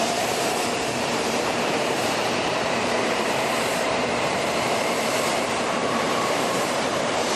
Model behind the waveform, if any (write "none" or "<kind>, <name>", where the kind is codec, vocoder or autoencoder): vocoder, BigVGAN v2